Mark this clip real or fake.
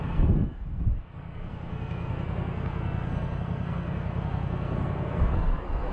fake